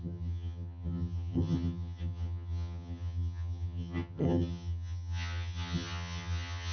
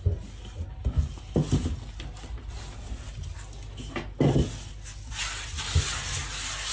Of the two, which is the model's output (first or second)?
first